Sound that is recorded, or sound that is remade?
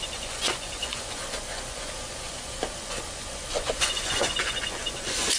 remade